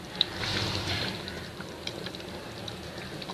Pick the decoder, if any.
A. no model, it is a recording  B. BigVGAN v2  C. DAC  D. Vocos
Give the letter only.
A